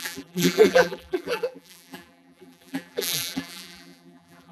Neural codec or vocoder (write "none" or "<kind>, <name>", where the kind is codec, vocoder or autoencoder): vocoder, BigVGAN v2